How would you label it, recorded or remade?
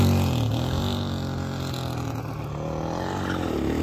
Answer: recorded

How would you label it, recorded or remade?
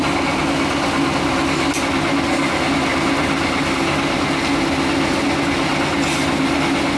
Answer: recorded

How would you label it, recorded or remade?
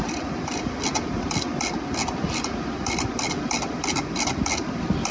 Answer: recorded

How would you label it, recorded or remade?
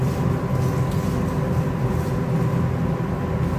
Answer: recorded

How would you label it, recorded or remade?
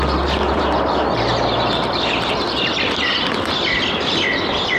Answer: remade